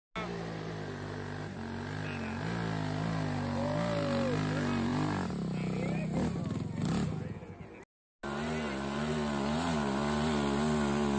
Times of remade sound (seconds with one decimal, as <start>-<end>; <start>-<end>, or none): none